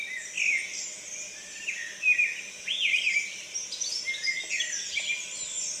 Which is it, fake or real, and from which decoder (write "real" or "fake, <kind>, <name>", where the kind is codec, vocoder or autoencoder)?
real